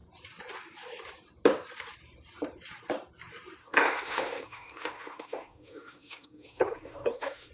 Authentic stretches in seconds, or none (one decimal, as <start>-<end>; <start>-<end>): 0.0-3.6